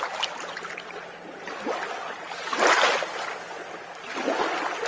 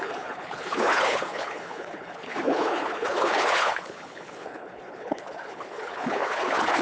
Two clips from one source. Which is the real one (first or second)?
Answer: first